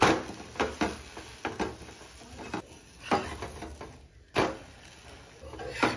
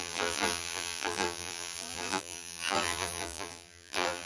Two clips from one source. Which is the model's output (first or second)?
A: second